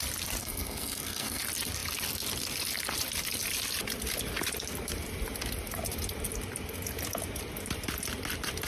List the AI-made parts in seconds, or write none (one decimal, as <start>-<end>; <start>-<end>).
0.4-1.4